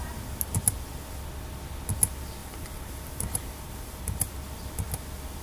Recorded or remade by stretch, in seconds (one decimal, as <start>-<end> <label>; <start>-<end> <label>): 0.0-2.4 recorded; 2.4-4.3 remade; 4.3-5.4 recorded